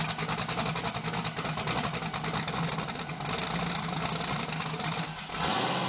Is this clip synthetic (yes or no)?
no